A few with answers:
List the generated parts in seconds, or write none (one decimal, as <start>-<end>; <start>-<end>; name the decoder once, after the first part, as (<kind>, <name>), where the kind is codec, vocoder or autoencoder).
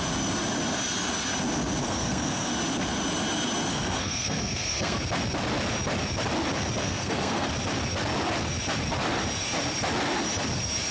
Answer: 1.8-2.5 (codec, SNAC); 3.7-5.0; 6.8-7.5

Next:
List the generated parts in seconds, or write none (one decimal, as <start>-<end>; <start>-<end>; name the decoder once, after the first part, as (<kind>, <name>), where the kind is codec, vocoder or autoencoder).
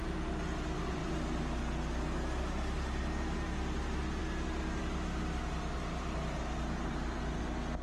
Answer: none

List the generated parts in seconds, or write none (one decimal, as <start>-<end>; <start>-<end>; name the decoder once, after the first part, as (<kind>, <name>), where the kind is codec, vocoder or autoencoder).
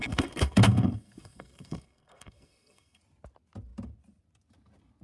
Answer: 0.0-3.0 (codec, SNAC)